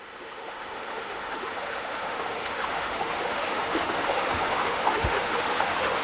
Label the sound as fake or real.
fake